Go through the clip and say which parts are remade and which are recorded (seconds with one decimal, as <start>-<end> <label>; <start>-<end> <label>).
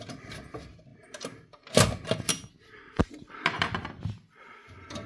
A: 0.0-5.1 recorded